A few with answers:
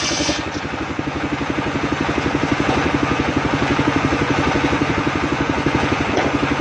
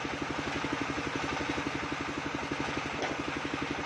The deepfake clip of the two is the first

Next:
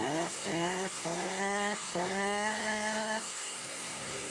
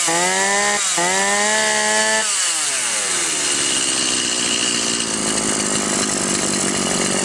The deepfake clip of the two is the first